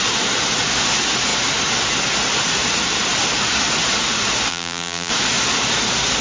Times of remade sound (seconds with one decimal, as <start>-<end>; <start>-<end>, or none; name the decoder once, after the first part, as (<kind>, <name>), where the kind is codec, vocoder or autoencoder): 4.5-5.1 (vocoder, BigVGAN v2)